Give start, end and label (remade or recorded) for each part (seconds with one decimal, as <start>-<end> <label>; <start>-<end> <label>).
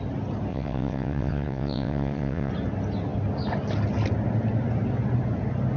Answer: 0.0-0.5 recorded; 0.5-2.5 remade; 2.5-5.8 recorded